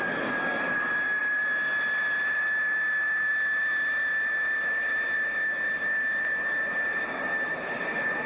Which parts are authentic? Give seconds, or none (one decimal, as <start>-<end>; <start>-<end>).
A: 0.0-8.3